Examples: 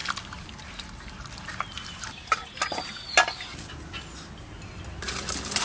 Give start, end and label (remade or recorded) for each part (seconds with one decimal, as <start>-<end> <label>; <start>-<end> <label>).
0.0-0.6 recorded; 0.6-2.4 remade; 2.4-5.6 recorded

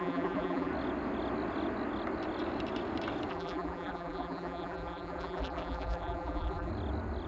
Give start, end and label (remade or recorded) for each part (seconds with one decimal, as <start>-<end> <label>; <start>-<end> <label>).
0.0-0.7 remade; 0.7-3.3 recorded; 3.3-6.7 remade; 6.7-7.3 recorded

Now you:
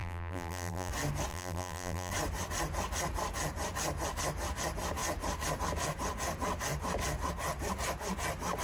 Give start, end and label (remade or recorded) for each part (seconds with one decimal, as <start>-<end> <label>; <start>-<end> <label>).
0.0-0.9 remade; 0.9-1.3 recorded; 1.3-2.1 remade; 2.1-8.6 recorded

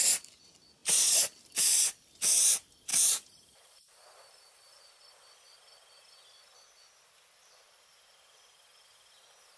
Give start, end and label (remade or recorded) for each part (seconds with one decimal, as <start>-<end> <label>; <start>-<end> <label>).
0.0-2.9 recorded; 2.9-4.8 remade; 4.8-9.6 recorded

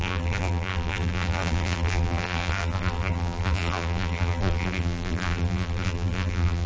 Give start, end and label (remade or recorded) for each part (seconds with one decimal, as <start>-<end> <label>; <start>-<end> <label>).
0.0-6.7 remade